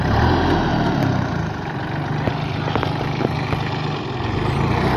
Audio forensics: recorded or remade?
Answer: recorded